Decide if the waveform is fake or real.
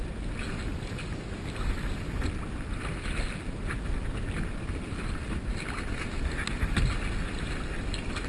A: real